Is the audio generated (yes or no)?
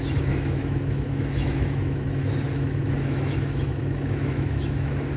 yes